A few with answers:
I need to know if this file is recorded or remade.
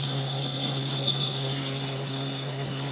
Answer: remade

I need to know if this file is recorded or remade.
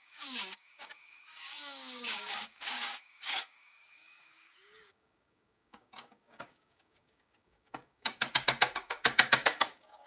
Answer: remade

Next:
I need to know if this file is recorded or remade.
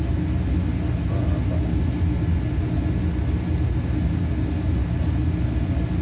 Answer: recorded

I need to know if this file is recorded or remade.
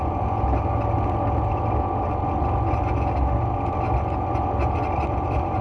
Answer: recorded